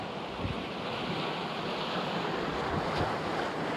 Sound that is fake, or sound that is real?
real